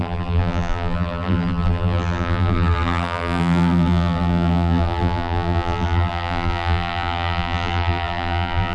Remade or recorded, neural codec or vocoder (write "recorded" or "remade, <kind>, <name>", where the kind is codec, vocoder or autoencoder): remade, vocoder, BigVGAN v2